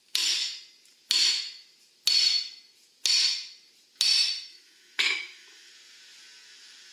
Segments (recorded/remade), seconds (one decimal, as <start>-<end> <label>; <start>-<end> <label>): 0.0-4.5 recorded; 4.5-5.7 remade; 5.7-6.9 recorded